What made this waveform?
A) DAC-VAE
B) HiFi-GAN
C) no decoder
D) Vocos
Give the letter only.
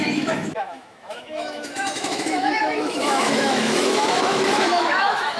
A